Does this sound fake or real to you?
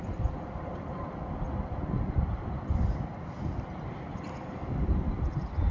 real